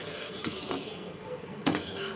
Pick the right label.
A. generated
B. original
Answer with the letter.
A